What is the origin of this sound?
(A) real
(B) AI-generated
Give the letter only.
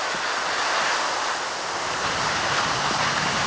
A